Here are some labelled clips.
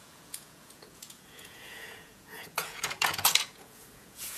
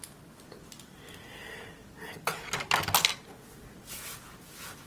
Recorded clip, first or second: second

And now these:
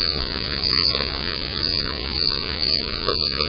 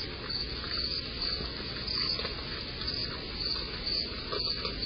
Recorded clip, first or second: second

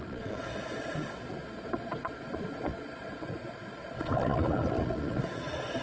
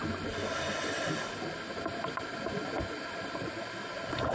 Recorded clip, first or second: second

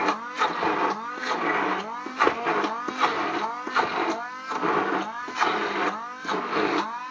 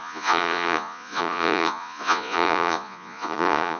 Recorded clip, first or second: first